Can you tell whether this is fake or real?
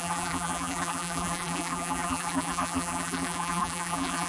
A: fake